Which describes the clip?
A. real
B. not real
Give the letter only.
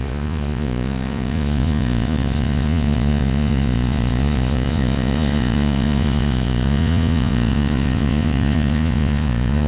B